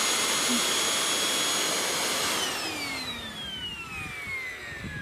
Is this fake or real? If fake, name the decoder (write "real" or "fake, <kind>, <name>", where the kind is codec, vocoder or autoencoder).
real